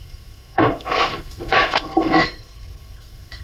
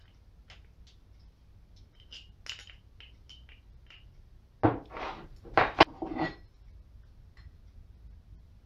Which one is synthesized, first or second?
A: first